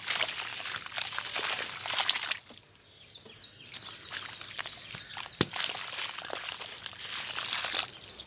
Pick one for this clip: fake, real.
real